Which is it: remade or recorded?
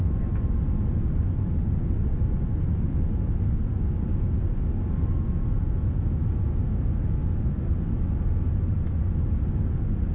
recorded